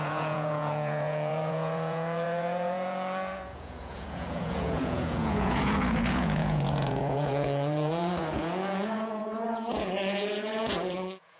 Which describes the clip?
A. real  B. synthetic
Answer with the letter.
B